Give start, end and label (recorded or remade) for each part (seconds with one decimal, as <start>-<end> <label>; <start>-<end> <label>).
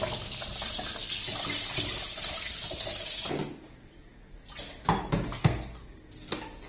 0.0-5.4 recorded; 5.4-6.0 remade; 6.0-6.7 recorded